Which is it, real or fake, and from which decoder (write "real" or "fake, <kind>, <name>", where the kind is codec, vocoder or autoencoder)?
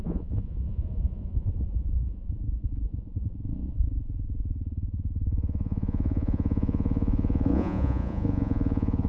fake, vocoder, Vocos